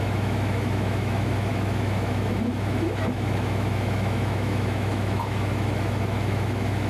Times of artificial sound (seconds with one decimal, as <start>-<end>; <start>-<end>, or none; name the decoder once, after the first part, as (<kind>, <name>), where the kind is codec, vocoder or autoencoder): 0.0-6.9 (autoencoder, DAC-VAE)